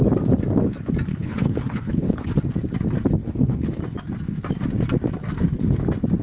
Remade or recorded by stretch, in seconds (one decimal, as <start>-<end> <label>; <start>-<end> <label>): 0.0-1.1 recorded; 1.1-2.3 remade; 2.3-3.2 recorded; 3.2-3.8 remade; 3.8-6.2 recorded